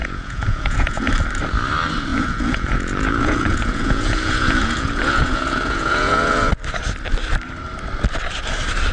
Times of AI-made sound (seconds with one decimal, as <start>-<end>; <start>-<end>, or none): 0.0-1.1; 2.1-6.5